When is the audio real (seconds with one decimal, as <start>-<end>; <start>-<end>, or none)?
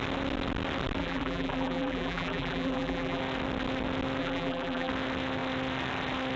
0.0-1.0; 3.2-4.2; 4.9-6.4